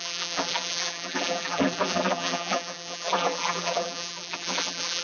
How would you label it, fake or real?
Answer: fake